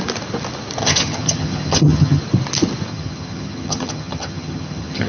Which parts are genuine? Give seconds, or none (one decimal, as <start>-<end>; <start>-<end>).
0.0-0.8; 2.2-2.9